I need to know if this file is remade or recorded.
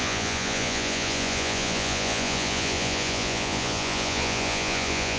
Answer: remade